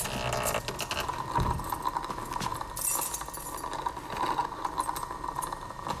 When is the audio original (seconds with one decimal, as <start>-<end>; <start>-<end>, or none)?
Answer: 0.0-6.0